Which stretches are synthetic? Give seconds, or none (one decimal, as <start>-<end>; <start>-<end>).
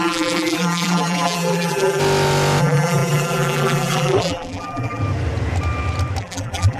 0.0-2.0; 2.6-5.0; 6.2-6.8